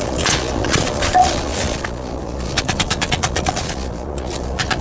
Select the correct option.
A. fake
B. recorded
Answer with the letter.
A